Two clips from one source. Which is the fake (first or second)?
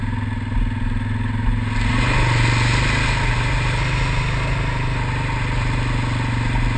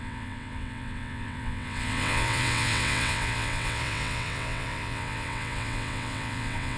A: second